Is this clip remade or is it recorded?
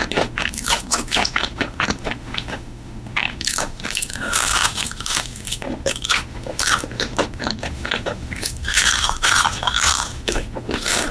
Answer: remade